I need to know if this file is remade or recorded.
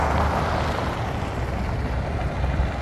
recorded